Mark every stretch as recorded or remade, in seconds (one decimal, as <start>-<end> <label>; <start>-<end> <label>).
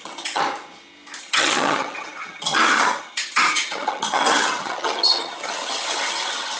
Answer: 0.0-0.4 remade; 0.4-1.2 recorded; 1.2-6.6 remade